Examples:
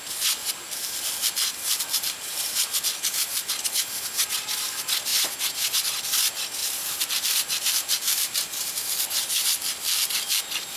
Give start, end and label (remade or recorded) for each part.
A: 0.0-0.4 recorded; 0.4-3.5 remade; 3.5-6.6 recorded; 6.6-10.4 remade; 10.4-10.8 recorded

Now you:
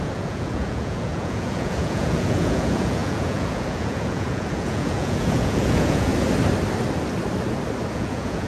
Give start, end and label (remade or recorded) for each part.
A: 0.0-6.1 remade; 6.1-7.9 recorded; 7.9-8.5 remade

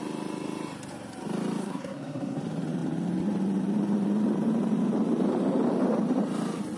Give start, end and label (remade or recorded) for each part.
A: 0.0-1.6 recorded; 1.6-2.4 remade; 2.4-6.8 recorded

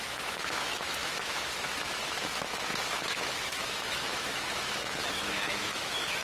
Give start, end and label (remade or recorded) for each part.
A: 0.0-6.2 remade

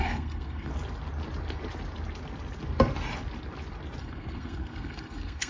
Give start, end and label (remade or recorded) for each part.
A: 0.0-0.7 remade; 0.7-4.0 recorded; 4.0-5.5 remade